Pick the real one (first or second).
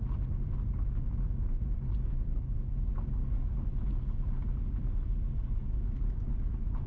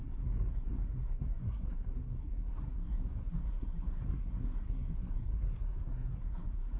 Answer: first